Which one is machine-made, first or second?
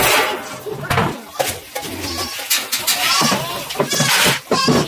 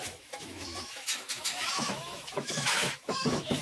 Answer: second